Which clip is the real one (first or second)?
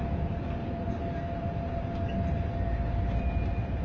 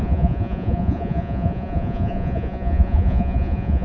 first